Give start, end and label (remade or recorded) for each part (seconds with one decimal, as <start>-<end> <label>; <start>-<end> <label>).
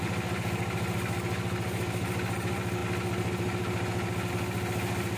0.0-5.2 recorded